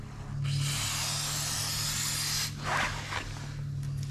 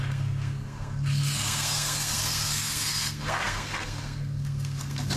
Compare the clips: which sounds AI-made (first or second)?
second